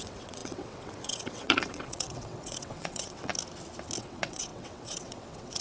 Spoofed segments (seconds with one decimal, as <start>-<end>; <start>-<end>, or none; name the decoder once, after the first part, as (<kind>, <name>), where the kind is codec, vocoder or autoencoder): 0.0-3.3 (vocoder, WaveNeXt); 4.0-5.6